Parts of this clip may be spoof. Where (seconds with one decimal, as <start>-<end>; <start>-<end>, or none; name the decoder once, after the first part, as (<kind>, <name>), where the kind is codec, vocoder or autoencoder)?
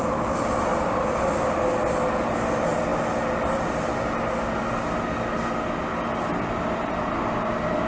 0.7-1.5 (vocoder, BigVGAN v2)